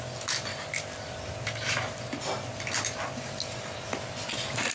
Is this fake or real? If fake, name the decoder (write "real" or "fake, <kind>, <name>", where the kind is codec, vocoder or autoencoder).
real